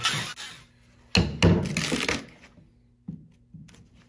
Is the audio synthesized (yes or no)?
no